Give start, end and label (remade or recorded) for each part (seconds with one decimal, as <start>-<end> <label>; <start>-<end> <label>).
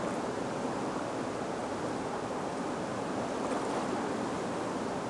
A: 0.0-5.1 recorded